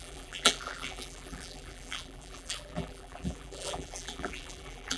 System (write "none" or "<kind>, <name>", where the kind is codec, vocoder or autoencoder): vocoder, BigVGAN v2